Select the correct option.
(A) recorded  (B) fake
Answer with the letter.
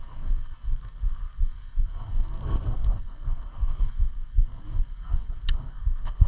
B